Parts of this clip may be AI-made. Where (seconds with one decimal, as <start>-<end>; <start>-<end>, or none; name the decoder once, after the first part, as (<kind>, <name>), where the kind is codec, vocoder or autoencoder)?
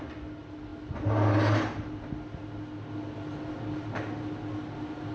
none